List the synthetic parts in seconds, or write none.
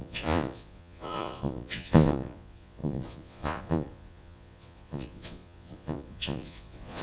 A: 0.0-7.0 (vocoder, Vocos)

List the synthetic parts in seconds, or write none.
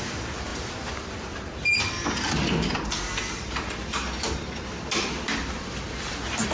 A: 0.0-6.5 (vocoder, BigVGAN v2)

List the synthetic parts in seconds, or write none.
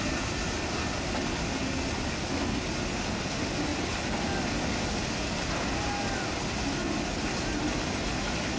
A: none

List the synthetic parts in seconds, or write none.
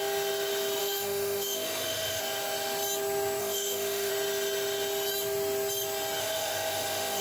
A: 0.8-2.2 (autoencoder, DAC-VAE); 3.4-4.1; 6.2-7.2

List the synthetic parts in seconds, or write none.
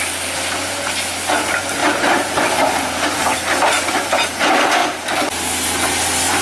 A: 1.8-2.5 (vocoder, BigVGAN v2)